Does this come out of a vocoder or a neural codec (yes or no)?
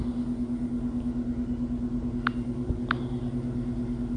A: no